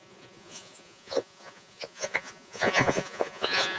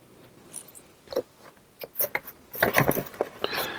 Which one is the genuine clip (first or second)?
second